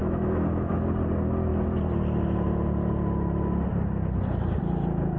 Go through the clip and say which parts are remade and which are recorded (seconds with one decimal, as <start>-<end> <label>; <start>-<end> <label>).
0.0-0.7 remade; 0.7-5.2 recorded